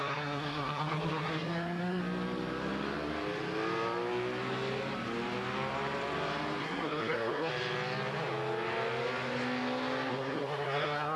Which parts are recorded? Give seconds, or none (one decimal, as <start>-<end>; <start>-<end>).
2.0-6.6; 7.5-10.1